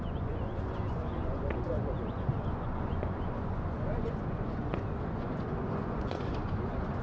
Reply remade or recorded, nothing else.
remade